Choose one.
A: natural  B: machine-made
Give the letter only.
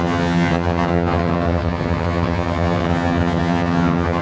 B